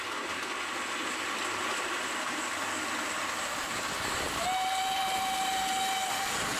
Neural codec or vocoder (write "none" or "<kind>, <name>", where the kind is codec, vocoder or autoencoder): none